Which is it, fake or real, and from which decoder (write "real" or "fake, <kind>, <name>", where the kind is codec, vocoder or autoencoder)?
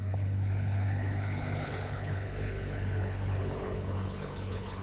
fake, codec, HILCodec